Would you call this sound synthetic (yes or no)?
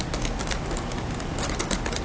no